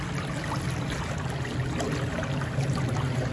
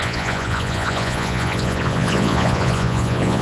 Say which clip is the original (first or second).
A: first